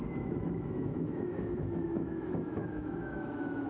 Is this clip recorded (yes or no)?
no